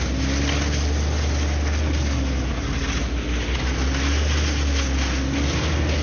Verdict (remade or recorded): recorded